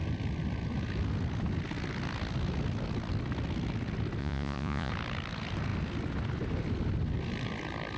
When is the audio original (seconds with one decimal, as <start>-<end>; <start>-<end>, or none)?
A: 0.0-4.2; 4.9-8.0